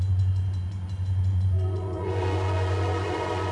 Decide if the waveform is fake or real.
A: fake